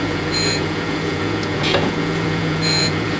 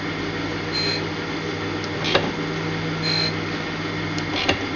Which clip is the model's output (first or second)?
first